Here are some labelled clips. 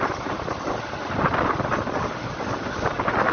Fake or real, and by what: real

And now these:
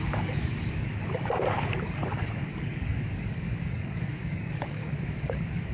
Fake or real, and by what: fake, codec, DAC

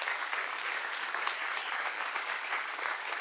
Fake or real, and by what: fake, codec, DAC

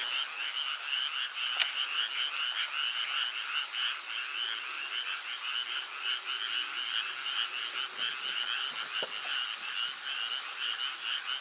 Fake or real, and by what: real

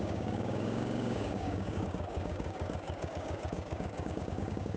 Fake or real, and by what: fake, codec, DAC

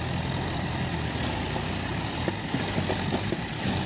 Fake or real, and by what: real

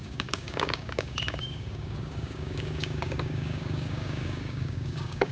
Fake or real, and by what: fake, codec, DAC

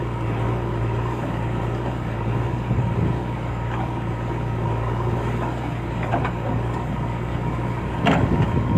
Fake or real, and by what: fake, codec, DAC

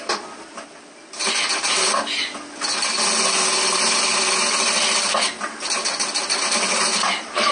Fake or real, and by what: real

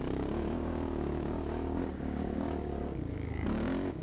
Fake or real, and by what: fake, codec, DAC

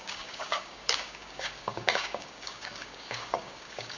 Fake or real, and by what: fake, codec, DAC